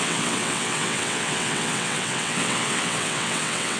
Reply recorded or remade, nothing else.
remade